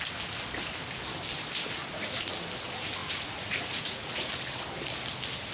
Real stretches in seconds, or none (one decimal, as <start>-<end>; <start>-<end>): 0.0-1.8; 2.3-3.0; 4.3-5.5